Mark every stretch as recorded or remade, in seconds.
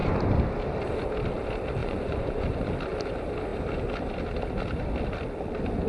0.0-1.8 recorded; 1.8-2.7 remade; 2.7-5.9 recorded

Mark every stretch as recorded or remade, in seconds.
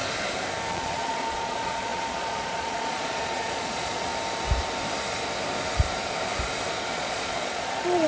0.0-0.7 recorded; 0.7-4.1 remade; 4.1-6.9 recorded; 6.9-8.1 remade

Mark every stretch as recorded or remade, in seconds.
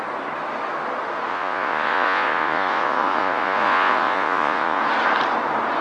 0.0-1.3 recorded; 1.3-4.8 remade; 4.8-5.8 recorded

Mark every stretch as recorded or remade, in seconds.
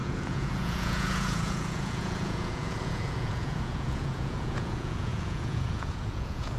0.0-6.6 remade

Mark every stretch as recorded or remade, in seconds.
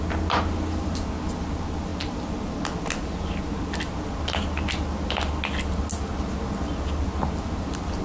0.0-8.0 recorded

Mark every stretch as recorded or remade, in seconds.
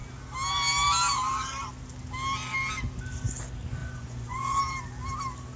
0.0-3.8 recorded; 3.8-4.6 remade; 4.6-5.6 recorded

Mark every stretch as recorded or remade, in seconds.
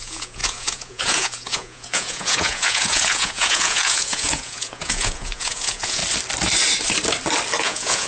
0.0-6.0 remade; 6.0-7.6 recorded; 7.6-8.1 remade